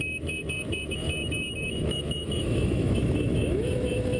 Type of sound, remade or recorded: remade